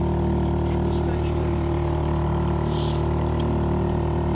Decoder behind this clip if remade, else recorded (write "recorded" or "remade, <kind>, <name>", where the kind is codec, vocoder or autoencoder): remade, vocoder, BigVGAN v2